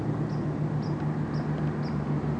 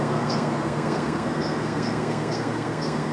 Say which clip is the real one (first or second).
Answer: first